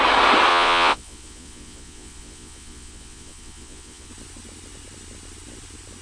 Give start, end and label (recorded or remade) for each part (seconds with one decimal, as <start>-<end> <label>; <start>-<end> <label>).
0.0-0.5 recorded; 0.5-4.1 remade; 4.1-6.0 recorded